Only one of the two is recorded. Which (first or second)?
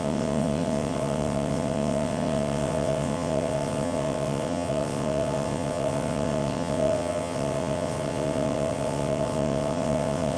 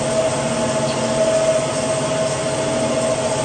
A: second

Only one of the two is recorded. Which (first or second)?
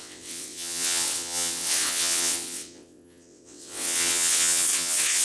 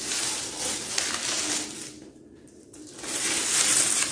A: second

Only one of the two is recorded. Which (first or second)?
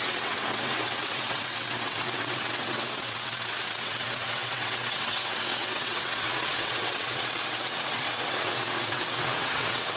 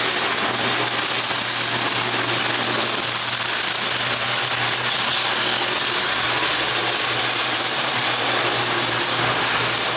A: second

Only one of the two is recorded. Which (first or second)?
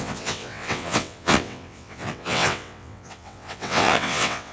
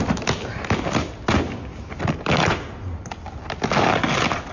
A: second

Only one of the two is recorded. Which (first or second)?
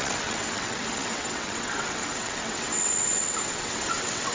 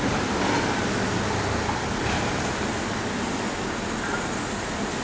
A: second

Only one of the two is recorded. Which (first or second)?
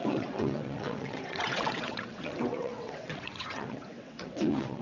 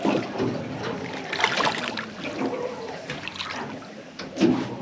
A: second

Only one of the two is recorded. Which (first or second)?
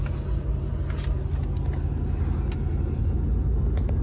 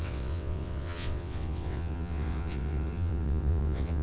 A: first